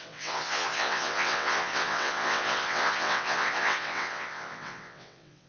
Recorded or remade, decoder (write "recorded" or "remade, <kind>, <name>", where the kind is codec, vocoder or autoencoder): remade, vocoder, WaveNeXt